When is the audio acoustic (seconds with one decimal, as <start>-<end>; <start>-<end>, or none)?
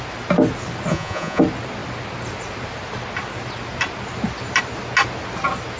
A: 0.0-0.9; 1.4-5.8